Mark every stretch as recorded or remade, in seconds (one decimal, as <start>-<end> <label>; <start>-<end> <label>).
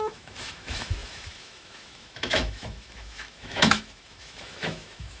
0.0-5.2 remade